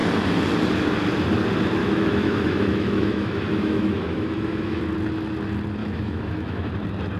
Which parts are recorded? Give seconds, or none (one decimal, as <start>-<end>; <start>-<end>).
0.0-1.8; 4.8-5.8; 6.7-7.2